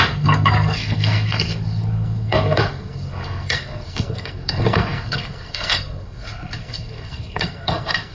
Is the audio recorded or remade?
remade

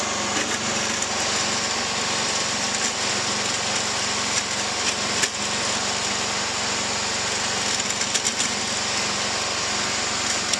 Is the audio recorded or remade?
recorded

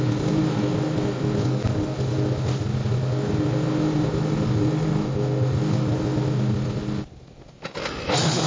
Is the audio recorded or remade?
recorded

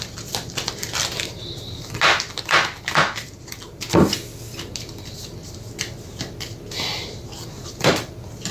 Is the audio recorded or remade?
recorded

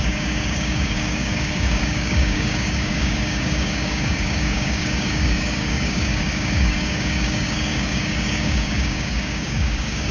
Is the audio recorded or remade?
remade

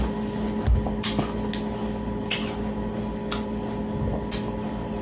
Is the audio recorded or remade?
recorded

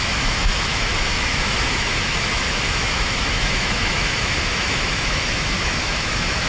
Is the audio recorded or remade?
remade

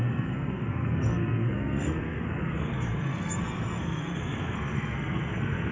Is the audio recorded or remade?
remade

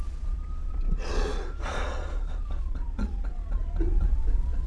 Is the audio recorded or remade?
remade